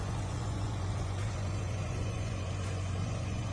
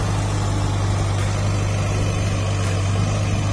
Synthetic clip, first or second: first